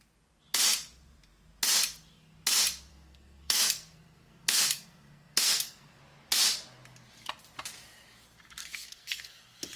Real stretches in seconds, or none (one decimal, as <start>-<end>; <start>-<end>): 0.0-2.9; 6.0-8.6; 9.4-9.8

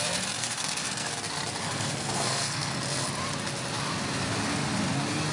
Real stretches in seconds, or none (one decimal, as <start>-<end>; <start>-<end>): 0.0-0.4; 1.1-1.6; 2.8-5.3

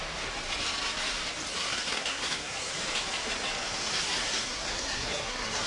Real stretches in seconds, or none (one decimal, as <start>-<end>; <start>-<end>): 0.0-1.5; 2.7-4.0

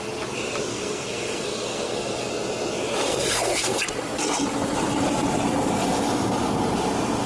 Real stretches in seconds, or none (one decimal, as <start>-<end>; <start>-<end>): 0.0-0.7; 2.3-3.0; 3.8-7.3

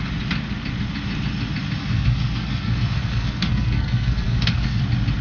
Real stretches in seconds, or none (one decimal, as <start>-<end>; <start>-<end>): 0.0-1.8; 4.8-5.2

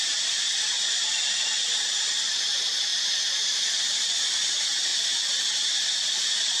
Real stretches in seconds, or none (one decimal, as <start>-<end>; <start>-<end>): 0.0-6.6

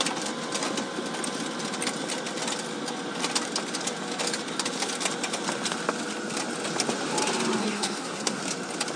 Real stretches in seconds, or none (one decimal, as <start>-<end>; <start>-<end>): 0.0-7.6; 8.4-9.0

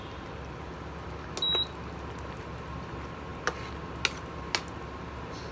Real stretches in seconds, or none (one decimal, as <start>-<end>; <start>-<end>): 0.0-5.5